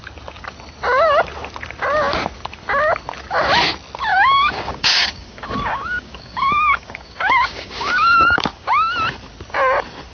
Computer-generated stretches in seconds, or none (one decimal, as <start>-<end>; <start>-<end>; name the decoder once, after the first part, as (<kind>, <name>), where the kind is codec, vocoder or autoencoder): 4.1-8.7 (codec, DAC)